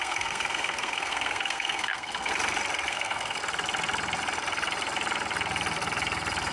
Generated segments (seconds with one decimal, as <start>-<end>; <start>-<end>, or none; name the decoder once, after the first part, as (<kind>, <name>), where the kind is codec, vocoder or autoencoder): 0.0-2.3 (codec, SNAC); 2.9-3.4